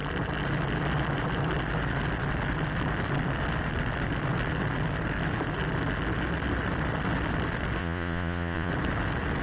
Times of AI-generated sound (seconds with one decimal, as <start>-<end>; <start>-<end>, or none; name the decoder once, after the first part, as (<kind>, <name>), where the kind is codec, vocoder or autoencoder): 7.8-8.7 (vocoder, Vocos)